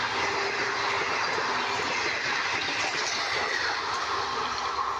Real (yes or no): yes